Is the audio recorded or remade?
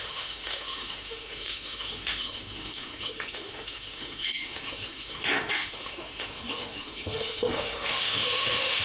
remade